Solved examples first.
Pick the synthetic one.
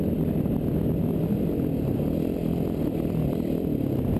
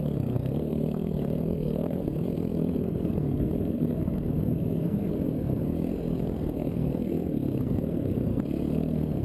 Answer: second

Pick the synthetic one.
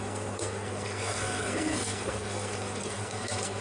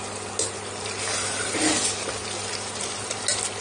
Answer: first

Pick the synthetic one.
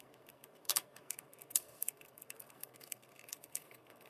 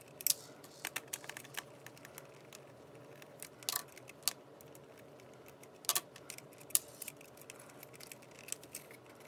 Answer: first